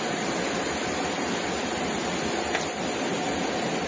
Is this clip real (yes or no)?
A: yes